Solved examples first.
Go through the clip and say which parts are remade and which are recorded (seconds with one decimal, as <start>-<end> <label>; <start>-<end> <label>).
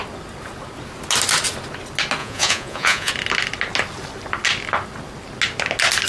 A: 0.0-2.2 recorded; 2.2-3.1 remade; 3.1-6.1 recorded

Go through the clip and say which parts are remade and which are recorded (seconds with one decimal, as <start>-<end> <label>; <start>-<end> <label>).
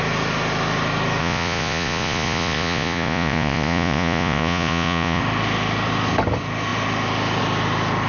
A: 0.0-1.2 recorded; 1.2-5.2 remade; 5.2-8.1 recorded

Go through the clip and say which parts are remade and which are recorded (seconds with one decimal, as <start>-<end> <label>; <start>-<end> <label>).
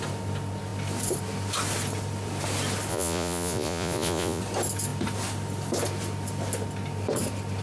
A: 0.0-2.9 recorded; 2.9-4.4 remade; 4.4-7.6 recorded